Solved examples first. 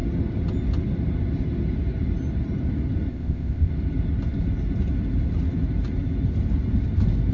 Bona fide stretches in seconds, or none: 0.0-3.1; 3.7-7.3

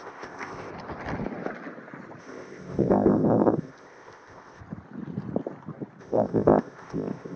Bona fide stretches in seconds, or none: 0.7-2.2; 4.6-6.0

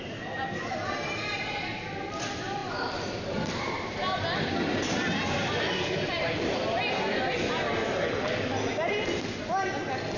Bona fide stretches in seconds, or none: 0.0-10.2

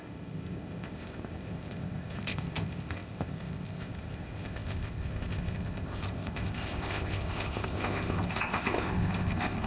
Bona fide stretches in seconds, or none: none

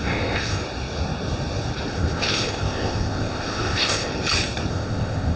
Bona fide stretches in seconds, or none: 0.6-1.9; 4.1-4.7